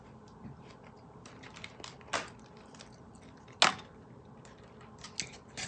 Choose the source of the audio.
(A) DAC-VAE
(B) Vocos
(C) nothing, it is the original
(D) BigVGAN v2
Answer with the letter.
C